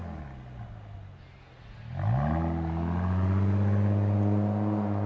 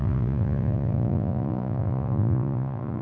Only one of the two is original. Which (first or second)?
first